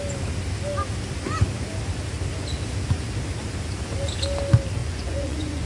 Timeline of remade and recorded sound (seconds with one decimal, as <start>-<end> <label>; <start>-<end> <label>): 0.0-4.8 recorded; 4.8-5.7 remade